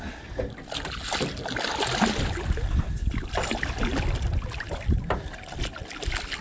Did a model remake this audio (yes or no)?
no